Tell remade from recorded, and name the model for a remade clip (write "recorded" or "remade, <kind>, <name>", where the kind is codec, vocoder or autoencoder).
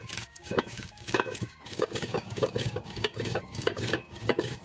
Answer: remade, codec, DAC